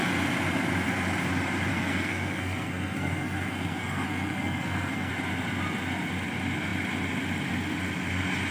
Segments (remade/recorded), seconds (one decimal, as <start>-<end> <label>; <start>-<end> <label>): 0.0-1.7 recorded; 1.7-5.1 remade; 5.1-8.5 recorded